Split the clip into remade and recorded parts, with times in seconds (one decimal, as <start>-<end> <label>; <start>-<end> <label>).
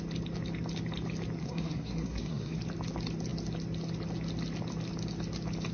0.0-1.4 recorded; 1.4-2.6 remade; 2.6-5.7 recorded